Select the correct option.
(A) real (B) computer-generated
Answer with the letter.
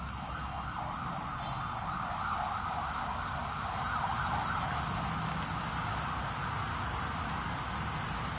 A